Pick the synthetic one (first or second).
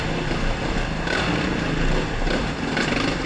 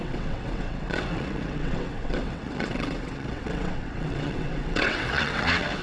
second